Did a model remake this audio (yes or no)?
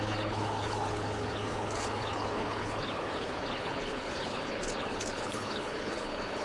yes